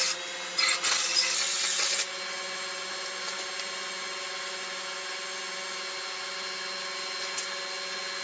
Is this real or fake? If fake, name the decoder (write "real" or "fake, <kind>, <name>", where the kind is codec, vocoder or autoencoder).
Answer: real